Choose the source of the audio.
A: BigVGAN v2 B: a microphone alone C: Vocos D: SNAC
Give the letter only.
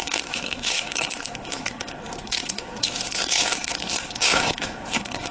D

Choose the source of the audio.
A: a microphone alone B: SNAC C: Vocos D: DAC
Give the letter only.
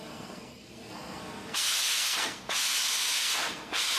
B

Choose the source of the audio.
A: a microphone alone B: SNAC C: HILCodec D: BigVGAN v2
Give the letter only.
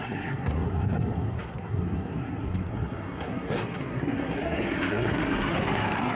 B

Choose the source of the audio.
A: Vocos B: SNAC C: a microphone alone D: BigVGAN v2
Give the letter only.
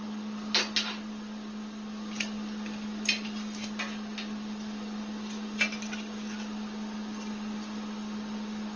C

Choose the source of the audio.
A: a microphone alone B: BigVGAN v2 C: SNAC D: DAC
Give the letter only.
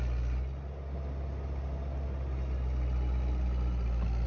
A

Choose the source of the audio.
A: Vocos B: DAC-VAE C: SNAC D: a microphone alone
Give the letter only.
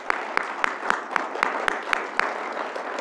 D